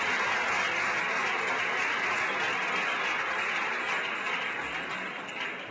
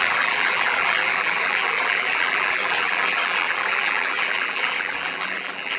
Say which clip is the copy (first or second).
second